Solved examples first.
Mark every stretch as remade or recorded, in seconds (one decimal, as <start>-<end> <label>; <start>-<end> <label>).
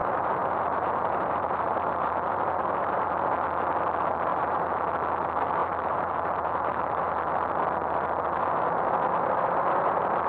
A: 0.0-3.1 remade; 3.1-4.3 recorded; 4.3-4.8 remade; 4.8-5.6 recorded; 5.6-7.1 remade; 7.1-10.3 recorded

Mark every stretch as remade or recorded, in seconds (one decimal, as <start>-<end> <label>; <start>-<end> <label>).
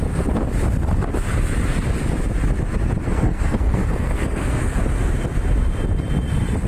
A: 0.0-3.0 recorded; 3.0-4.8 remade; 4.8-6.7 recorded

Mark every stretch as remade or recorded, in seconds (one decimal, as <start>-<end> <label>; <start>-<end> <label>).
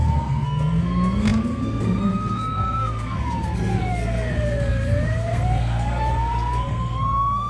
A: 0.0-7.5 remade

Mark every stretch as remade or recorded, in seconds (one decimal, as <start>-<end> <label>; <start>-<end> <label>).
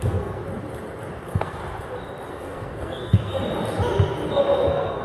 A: 0.0-0.4 remade; 0.4-1.2 recorded; 1.2-1.6 remade; 1.6-2.3 recorded; 2.3-3.4 remade; 3.4-4.4 recorded; 4.4-5.0 remade